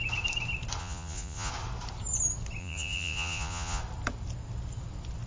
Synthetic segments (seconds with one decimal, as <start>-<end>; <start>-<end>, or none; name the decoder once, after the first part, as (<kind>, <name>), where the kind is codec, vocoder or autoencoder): 0.8-1.5 (vocoder, Vocos); 2.6-3.8